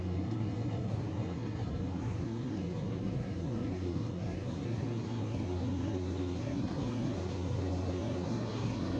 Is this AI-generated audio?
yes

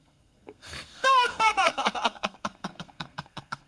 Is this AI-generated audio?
yes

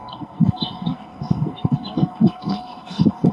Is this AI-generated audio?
yes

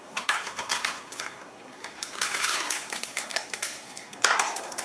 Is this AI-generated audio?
yes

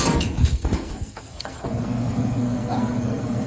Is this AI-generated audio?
yes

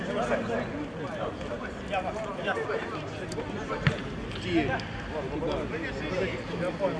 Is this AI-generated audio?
no